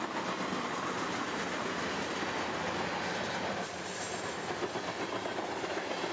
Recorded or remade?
recorded